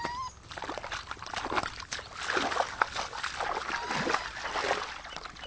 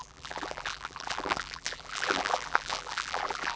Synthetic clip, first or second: second